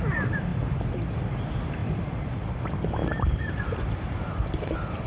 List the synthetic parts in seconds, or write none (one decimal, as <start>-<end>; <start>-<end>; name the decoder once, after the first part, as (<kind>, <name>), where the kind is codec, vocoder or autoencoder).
none